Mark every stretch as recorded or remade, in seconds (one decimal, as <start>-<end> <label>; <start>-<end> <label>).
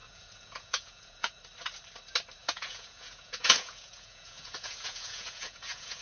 0.0-1.4 remade; 1.4-2.4 recorded; 2.4-6.0 remade